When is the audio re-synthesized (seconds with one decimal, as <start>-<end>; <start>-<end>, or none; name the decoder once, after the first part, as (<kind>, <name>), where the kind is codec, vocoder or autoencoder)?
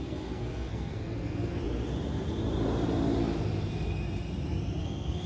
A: 0.0-1.6 (codec, SNAC); 4.8-5.3